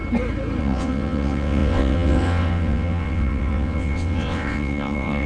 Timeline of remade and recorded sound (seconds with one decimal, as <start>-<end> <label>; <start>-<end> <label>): 0.0-0.6 recorded; 0.6-5.3 remade